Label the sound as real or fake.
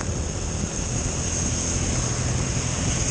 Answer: real